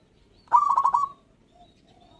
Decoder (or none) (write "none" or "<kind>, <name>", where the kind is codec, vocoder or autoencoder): none